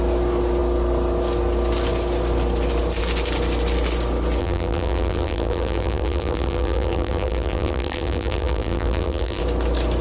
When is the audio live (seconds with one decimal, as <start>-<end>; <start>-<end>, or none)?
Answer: 0.0-4.4; 9.4-10.0